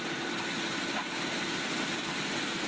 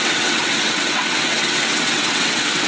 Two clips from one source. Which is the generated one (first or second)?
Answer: second